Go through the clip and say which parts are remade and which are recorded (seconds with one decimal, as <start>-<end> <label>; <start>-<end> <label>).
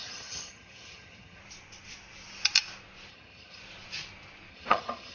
0.0-1.4 remade; 1.4-3.1 recorded; 3.1-3.6 remade; 3.6-4.5 recorded; 4.5-5.1 remade